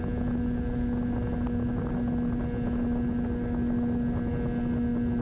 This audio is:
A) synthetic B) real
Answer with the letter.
B